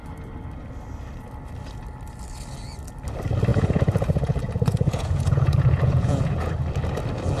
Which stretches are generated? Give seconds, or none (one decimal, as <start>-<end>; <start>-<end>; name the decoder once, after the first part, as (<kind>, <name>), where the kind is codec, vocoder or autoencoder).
3.5-6.5 (vocoder, Vocos)